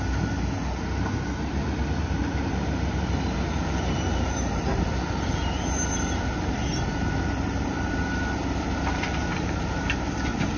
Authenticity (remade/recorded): remade